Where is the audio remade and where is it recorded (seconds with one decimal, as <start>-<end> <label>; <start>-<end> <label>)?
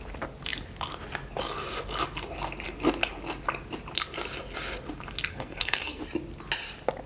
0.0-5.3 recorded; 5.3-6.0 remade; 6.0-7.1 recorded